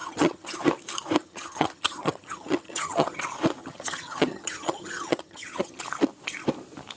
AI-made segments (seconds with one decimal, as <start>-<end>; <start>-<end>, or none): 0.0-0.6; 1.2-3.2; 3.6-5.8